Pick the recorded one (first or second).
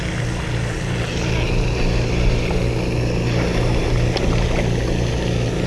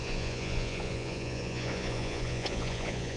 first